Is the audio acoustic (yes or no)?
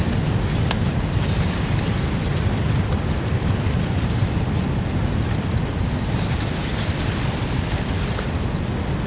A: yes